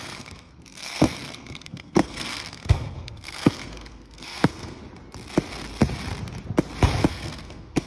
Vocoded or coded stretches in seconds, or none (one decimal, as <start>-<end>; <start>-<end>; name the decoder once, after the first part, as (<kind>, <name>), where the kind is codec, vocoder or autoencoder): 0.0-4.8 (codec, SNAC); 7.1-7.9